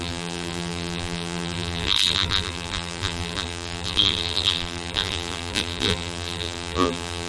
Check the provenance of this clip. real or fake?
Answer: fake